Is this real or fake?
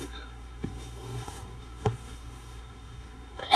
fake